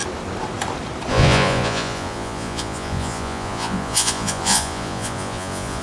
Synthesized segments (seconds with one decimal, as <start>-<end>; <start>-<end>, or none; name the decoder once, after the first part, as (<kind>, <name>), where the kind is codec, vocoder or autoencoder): 1.1-5.8 (vocoder, Vocos)